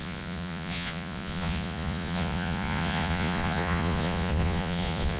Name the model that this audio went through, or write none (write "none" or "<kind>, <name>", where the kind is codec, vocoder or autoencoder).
vocoder, Vocos